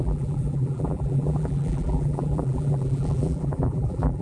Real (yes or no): no